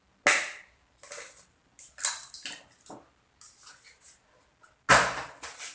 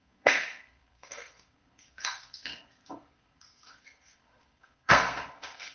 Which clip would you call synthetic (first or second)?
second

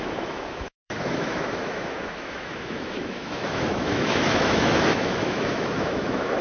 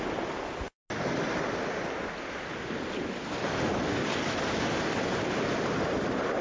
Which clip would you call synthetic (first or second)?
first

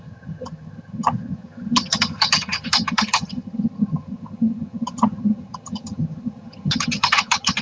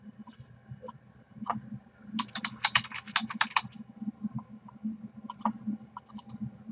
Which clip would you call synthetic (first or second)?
first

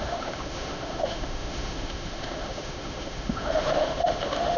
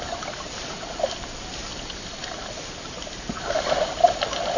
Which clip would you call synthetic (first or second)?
first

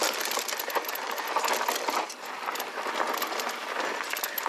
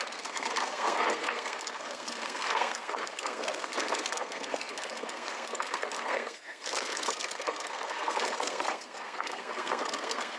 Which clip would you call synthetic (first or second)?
second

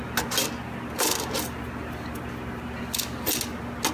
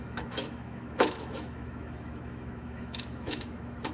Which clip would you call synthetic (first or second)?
second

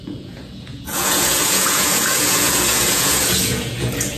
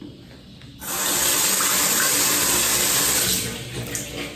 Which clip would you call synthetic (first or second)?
first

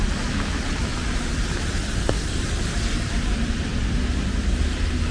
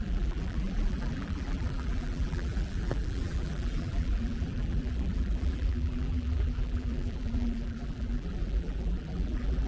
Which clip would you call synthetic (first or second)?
second